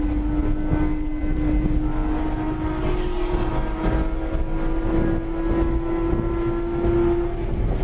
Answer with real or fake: real